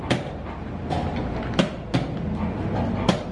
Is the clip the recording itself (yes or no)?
yes